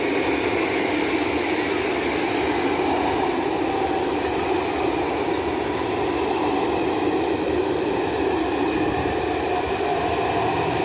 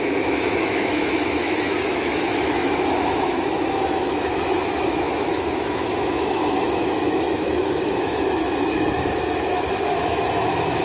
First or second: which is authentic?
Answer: first